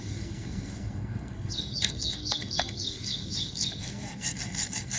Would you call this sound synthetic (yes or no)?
yes